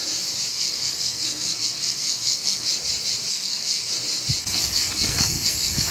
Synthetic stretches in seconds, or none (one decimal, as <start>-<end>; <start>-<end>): 0.5-2.7; 3.3-3.9; 4.4-5.9